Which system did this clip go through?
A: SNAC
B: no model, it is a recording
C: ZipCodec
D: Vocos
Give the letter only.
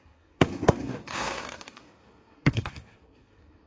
A